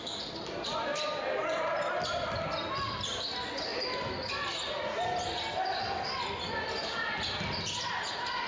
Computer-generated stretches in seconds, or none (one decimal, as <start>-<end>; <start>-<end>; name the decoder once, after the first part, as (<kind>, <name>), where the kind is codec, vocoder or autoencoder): none